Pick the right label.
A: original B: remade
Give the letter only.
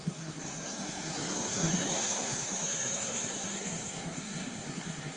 B